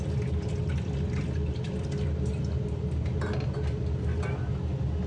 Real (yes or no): yes